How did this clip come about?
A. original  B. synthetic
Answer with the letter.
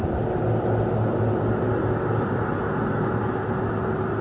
A